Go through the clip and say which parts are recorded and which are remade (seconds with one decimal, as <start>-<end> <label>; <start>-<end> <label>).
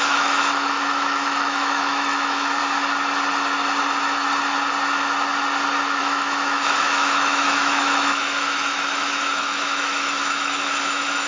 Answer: 0.0-2.6 remade; 2.6-6.0 recorded; 6.0-11.3 remade